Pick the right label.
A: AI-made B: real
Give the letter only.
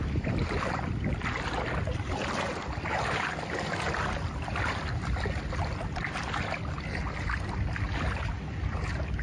B